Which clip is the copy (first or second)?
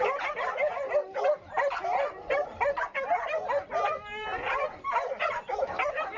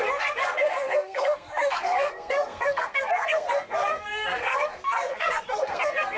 second